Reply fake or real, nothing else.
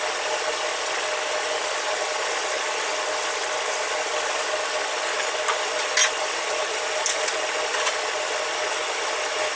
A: real